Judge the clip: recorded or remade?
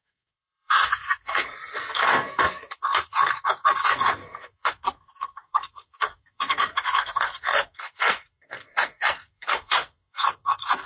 remade